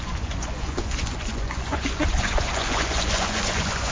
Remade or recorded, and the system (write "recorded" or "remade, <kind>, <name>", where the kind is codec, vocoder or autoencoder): remade, vocoder, Vocos